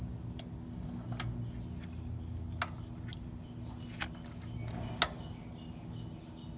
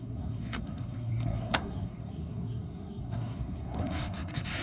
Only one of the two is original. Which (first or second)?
first